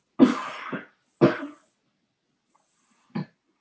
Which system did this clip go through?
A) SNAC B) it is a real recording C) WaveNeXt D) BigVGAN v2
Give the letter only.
B